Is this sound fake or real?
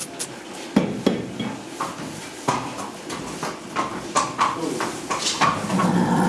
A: real